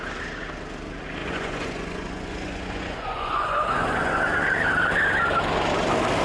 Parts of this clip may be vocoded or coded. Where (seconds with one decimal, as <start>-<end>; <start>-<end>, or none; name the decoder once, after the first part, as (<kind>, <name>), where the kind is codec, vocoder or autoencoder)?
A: 1.2-4.2 (vocoder, Vocos)